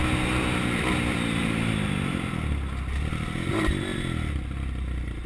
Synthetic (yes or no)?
no